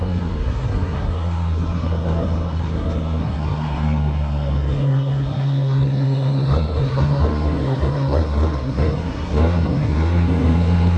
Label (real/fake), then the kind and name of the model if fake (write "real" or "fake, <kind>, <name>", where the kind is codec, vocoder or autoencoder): fake, codec, SNAC